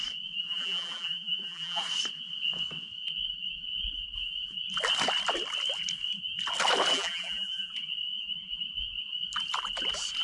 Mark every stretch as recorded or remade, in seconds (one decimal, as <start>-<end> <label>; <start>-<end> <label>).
0.0-0.4 recorded; 0.4-1.8 remade; 1.8-6.9 recorded; 6.9-7.7 remade; 7.7-10.2 recorded